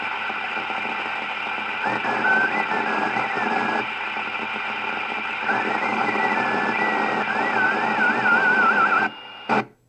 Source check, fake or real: real